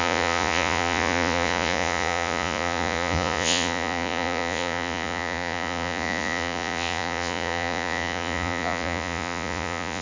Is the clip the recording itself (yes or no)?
no